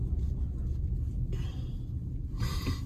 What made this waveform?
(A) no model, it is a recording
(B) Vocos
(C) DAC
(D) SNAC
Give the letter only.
A